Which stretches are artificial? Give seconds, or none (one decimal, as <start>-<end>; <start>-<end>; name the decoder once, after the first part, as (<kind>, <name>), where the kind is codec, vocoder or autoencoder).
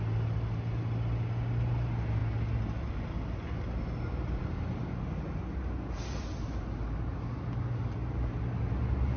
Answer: none